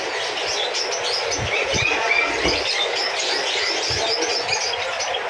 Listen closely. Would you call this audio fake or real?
real